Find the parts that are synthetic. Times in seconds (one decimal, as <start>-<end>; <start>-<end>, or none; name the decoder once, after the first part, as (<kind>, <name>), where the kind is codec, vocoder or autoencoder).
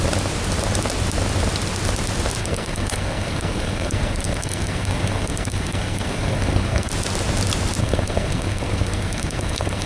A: 2.4-6.9 (codec, SNAC); 7.8-9.9